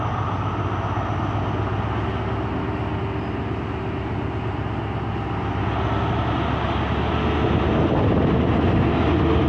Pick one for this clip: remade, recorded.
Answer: recorded